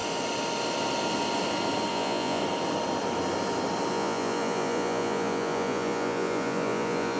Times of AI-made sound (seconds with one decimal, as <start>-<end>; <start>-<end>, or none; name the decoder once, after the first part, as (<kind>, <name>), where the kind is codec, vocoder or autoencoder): 1.9-2.4 (vocoder, Vocos); 3.9-7.2